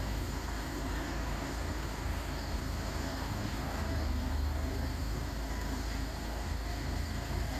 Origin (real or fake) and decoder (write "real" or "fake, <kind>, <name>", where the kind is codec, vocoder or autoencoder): fake, codec, DAC